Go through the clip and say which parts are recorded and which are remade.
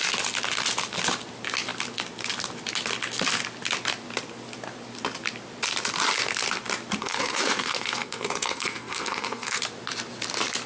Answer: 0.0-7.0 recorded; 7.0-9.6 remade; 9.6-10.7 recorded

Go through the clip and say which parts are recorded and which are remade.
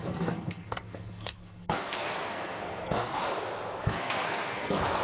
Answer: 0.0-3.1 remade; 3.1-3.8 recorded; 3.8-5.0 remade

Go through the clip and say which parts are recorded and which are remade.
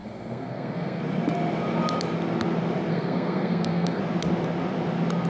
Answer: 0.0-1.0 remade; 1.0-2.9 recorded; 2.9-4.0 remade; 4.0-5.3 recorded